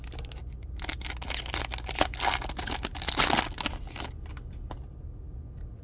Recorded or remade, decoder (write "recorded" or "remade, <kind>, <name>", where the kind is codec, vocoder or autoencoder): recorded